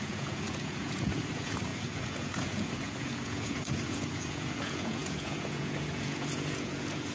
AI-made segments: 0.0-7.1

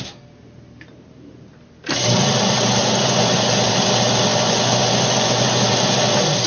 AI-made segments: 2.8-3.7; 4.3-5.7